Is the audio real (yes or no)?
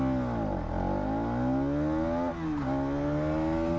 yes